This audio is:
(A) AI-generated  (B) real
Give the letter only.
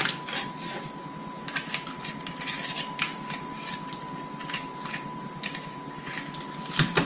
B